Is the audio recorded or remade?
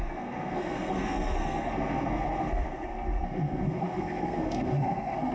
remade